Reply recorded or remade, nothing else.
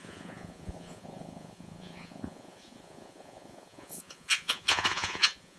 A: remade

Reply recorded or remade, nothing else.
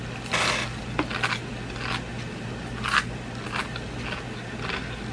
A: recorded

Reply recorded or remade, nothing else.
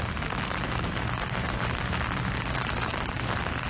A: recorded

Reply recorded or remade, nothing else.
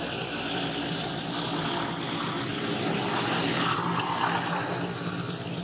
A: recorded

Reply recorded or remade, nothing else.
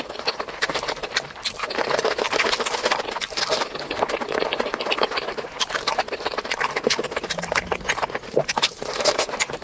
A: recorded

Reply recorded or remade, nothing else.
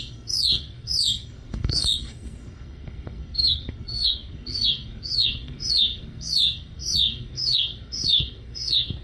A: remade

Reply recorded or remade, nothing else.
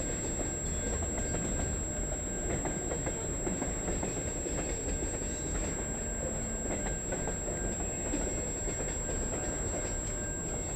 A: recorded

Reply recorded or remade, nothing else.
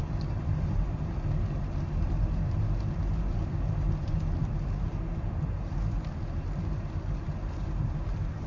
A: remade